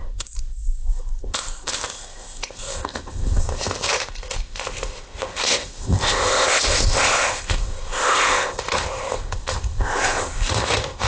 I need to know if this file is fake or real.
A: fake